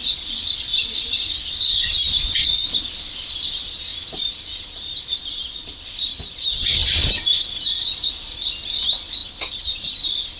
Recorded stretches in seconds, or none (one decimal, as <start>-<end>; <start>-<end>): 0.0-6.8; 7.5-10.4